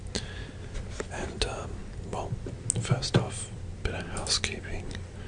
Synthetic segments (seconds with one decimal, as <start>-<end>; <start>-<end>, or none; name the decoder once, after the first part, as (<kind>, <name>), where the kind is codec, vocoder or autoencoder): none

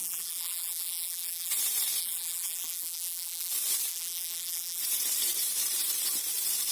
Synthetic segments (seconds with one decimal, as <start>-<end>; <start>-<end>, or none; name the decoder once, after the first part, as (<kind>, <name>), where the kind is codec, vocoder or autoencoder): 0.0-1.5 (vocoder, BigVGAN v2); 2.0-3.5; 3.9-4.8

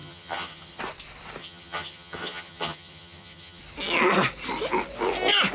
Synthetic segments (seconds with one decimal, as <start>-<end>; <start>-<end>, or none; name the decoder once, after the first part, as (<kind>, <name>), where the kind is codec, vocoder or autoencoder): 0.0-0.8 (vocoder, HiFi-GAN); 1.4-3.6

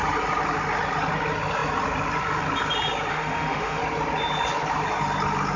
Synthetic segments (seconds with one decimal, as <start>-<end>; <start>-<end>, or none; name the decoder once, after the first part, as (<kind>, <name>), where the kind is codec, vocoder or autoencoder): 3.1-3.8 (autoencoder, DAC-VAE)

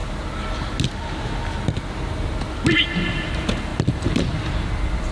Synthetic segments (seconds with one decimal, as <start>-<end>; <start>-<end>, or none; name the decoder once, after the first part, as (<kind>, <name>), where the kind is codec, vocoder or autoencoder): none

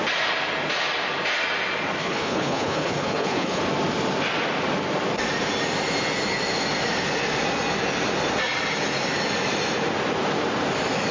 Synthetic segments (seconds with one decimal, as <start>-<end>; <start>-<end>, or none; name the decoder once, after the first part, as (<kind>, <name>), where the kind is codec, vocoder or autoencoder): 2.0-3.6 (codec, HILCodec)

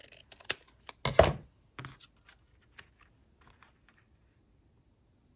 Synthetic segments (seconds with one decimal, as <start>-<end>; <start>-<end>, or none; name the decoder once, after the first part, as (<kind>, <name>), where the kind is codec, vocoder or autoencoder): none